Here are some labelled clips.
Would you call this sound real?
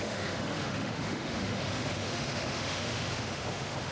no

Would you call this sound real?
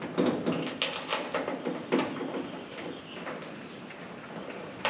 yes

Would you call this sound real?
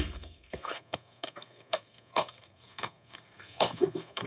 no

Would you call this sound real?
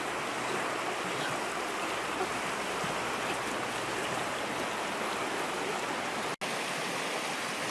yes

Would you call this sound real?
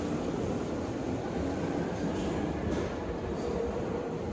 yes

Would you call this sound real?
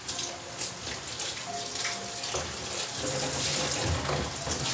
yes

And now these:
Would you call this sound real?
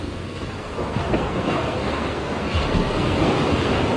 no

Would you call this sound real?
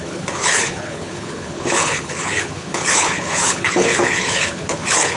no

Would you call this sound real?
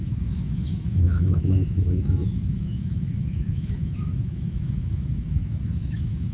no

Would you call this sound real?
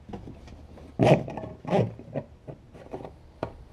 yes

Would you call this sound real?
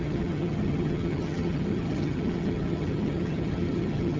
no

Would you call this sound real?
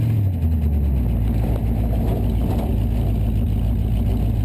yes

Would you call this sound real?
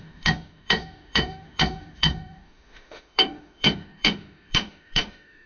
no